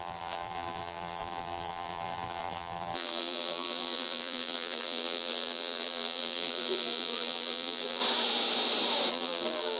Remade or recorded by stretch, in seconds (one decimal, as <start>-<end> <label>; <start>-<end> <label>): 0.0-8.0 remade; 8.0-9.1 recorded; 9.1-9.8 remade